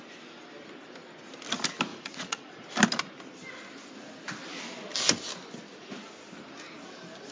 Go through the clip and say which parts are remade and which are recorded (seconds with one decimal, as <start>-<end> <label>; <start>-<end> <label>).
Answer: 0.0-1.9 recorded; 1.9-2.7 remade; 2.7-7.3 recorded